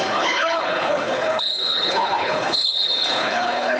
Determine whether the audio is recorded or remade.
remade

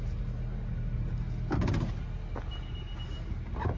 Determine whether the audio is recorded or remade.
recorded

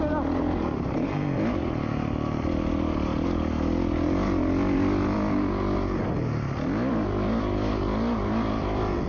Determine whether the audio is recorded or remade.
recorded